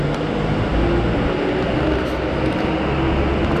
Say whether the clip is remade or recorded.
recorded